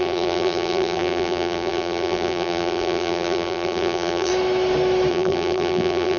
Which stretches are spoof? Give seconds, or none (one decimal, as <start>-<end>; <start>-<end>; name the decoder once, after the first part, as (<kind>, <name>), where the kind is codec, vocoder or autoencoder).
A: 0.0-4.3 (vocoder, BigVGAN v2); 5.1-6.2